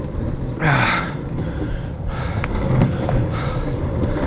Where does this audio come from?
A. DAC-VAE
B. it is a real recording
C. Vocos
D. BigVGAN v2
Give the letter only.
B